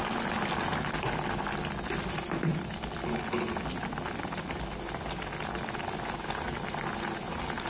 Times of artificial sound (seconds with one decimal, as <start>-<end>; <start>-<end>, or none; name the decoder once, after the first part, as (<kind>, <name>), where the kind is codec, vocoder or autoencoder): none